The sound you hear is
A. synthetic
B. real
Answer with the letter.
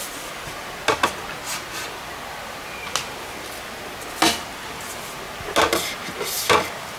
B